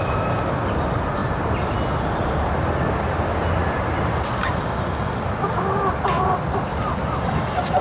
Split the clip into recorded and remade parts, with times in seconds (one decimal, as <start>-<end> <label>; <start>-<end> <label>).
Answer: 0.0-7.8 recorded